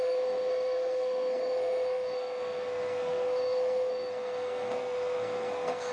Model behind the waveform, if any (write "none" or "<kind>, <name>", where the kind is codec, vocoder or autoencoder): codec, SNAC